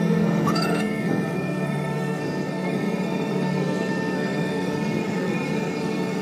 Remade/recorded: remade